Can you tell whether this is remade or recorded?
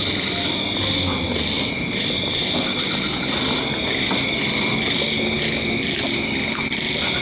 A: recorded